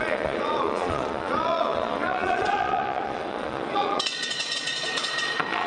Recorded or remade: remade